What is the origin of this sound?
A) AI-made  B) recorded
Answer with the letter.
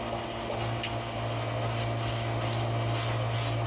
B